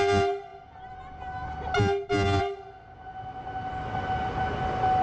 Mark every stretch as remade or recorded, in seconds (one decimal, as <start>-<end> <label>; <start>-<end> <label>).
0.0-5.0 recorded